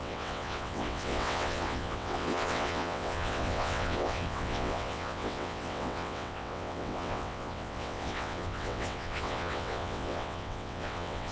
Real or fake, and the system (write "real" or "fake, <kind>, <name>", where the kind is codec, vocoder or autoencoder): fake, vocoder, WaveNeXt